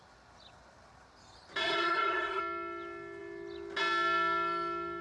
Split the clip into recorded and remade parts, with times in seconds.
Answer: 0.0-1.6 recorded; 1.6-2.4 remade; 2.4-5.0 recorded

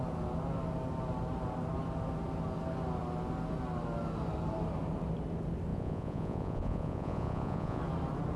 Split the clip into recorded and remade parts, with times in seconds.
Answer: 0.0-5.7 recorded; 5.7-7.8 remade; 7.8-8.4 recorded